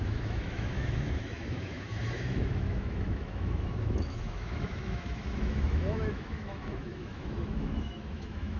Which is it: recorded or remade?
remade